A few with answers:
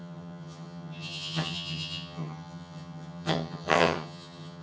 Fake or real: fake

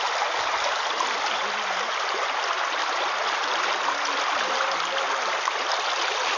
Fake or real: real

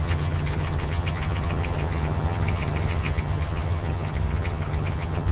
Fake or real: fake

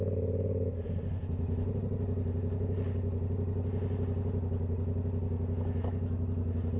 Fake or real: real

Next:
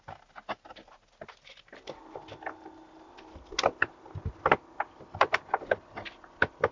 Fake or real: real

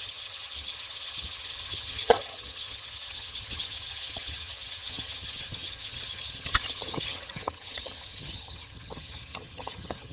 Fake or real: fake